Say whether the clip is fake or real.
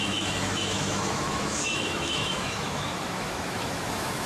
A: fake